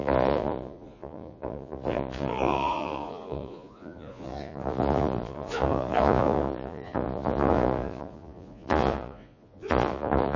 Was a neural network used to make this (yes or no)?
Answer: yes